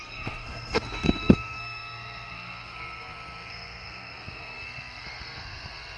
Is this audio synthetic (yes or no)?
yes